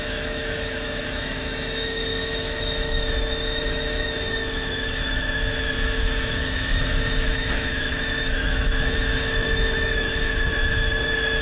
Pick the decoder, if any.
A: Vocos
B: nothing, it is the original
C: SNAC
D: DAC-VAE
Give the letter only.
D